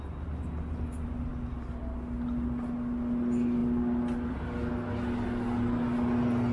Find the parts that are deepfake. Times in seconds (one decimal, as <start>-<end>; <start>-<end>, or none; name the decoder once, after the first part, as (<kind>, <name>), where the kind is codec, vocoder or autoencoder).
none